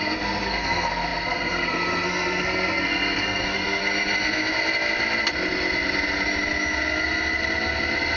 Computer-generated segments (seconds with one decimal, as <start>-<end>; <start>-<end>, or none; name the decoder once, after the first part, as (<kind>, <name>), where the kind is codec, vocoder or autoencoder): 0.0-3.8 (codec, SNAC)